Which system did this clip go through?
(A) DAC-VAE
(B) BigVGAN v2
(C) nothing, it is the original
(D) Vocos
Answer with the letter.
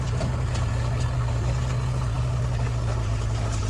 C